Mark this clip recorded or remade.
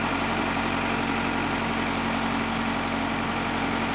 recorded